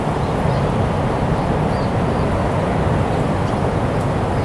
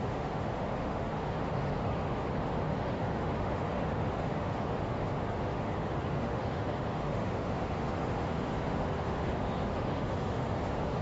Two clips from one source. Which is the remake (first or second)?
second